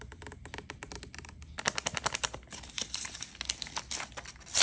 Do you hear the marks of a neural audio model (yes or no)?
no